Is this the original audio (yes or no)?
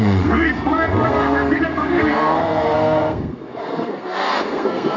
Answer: no